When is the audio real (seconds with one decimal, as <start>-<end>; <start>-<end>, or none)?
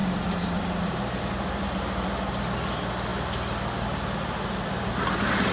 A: 0.0-5.5